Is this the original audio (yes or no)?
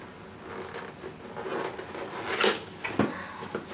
yes